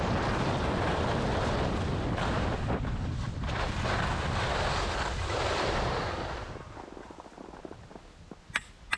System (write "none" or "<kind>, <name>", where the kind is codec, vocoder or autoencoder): none